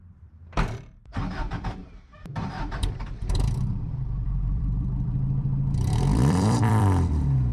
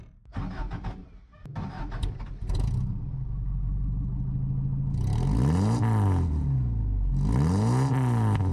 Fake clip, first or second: first